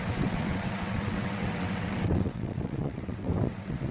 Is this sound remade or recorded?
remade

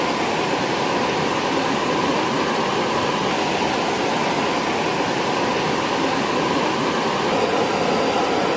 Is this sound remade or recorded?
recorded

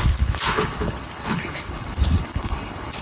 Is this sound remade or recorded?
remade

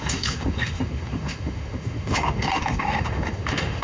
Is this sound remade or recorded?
remade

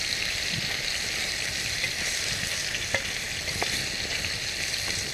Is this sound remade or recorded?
recorded